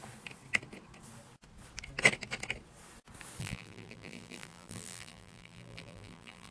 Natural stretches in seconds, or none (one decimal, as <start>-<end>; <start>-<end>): 0.0-3.4